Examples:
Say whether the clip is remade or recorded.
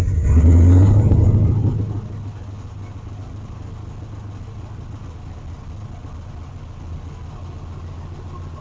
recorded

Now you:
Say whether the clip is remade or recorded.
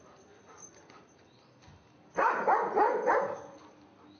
recorded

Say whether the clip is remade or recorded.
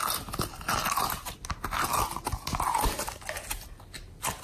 recorded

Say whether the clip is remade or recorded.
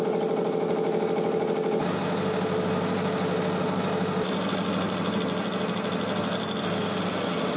recorded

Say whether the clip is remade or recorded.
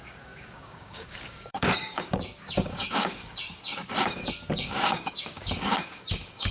remade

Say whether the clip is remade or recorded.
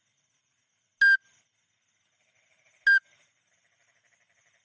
recorded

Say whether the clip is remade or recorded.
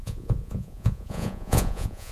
remade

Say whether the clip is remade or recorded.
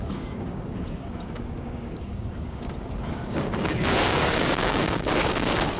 remade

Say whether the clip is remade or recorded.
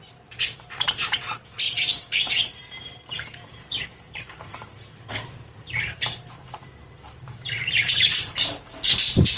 remade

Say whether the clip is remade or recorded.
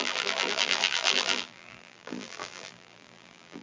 remade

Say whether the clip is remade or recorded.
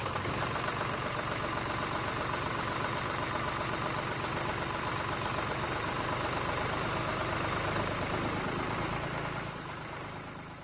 remade